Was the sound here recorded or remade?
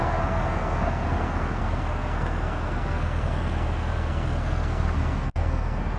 remade